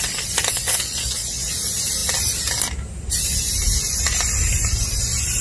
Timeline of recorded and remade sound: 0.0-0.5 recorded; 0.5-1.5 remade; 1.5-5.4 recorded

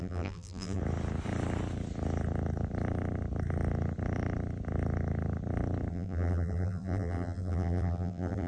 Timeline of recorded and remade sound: 0.0-0.8 remade; 0.8-5.9 recorded; 5.9-8.5 remade

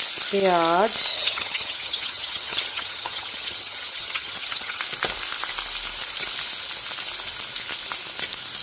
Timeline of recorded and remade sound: 0.0-1.1 recorded; 1.1-4.8 remade; 4.8-8.6 recorded

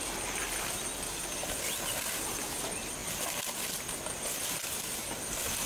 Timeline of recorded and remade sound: 0.0-5.7 recorded

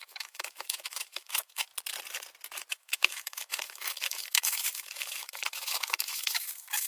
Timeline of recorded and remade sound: 0.0-1.7 remade; 1.7-2.7 recorded; 2.7-6.9 remade

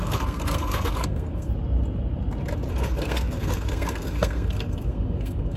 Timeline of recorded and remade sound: 0.0-1.5 remade; 1.5-2.7 recorded; 2.7-5.6 remade

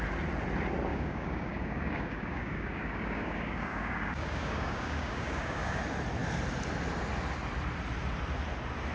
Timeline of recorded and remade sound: 0.0-0.9 recorded; 0.9-5.8 remade; 5.8-8.9 recorded